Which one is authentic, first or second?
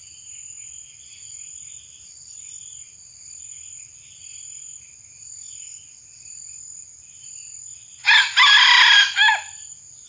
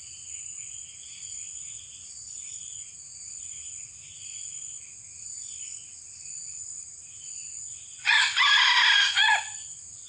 first